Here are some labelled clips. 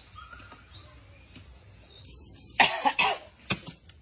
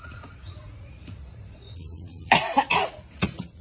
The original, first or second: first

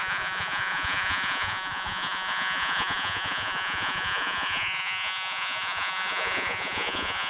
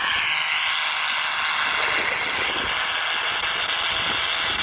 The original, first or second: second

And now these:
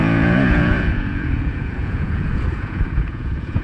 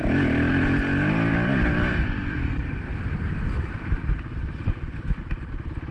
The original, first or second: second